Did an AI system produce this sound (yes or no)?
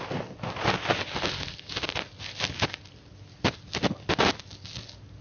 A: no